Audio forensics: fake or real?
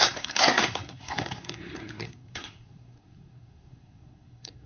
fake